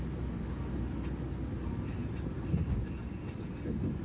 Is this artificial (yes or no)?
no